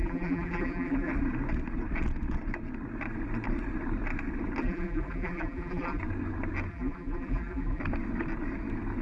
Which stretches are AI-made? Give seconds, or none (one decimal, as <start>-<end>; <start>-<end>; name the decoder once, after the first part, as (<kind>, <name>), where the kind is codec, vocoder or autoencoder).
0.0-1.1 (vocoder, BigVGAN v2); 4.6-6.0; 6.7-7.8